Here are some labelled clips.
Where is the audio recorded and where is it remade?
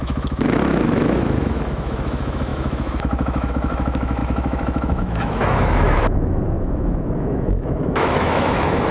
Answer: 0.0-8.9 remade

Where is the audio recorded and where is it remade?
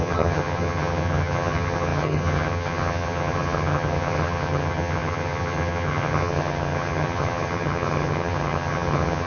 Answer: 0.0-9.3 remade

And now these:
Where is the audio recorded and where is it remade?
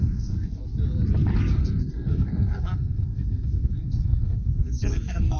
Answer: 0.0-0.6 remade; 0.6-1.4 recorded; 1.4-5.4 remade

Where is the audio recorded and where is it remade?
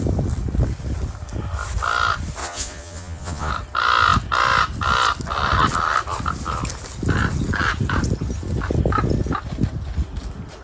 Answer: 0.0-2.4 recorded; 2.4-3.5 remade; 3.5-10.6 recorded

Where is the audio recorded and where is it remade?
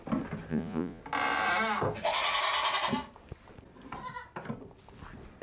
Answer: 0.0-0.5 recorded; 0.5-1.0 remade; 1.0-5.4 recorded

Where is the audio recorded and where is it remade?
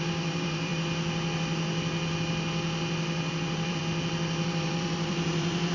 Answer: 0.0-0.7 remade; 0.7-3.3 recorded; 3.3-3.8 remade; 3.8-4.4 recorded; 4.4-5.7 remade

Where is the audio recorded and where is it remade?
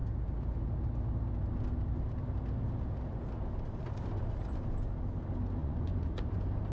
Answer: 0.0-5.6 recorded; 5.6-6.3 remade; 6.3-6.7 recorded